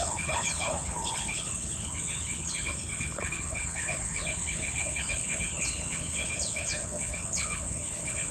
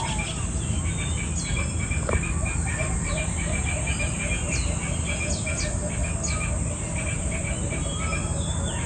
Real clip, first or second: second